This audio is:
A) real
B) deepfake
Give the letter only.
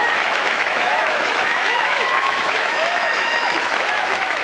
B